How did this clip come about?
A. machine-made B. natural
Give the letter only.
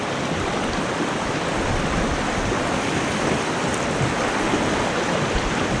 B